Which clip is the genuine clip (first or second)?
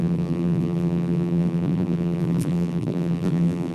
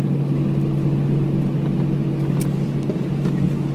second